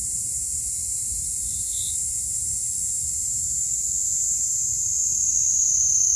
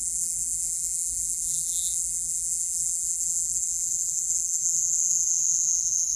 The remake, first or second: second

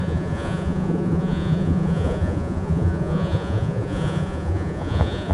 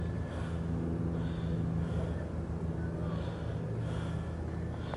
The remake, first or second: first